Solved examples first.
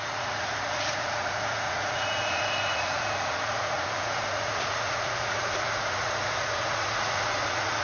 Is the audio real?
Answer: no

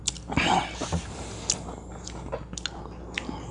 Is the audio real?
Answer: yes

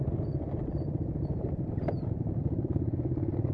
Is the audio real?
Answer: yes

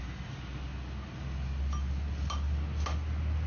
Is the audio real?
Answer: yes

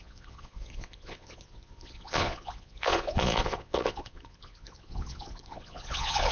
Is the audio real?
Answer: no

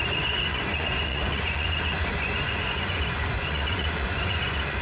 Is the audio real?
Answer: no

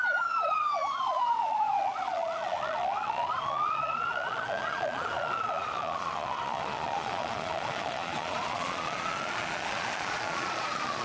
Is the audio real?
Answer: no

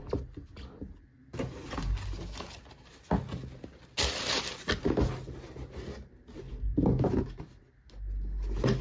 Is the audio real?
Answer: yes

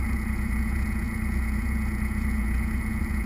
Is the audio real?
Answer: no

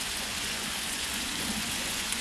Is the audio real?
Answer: no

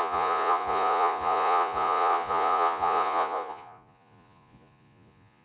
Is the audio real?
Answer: no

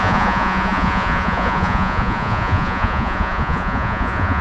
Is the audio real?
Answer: no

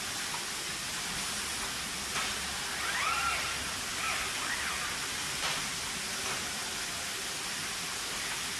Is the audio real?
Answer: yes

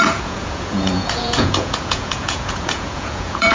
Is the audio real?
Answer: no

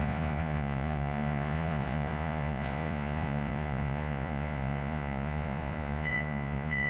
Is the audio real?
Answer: no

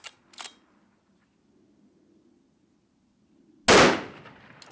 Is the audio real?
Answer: yes